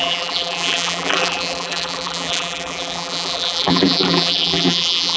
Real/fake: fake